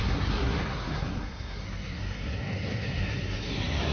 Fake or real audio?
fake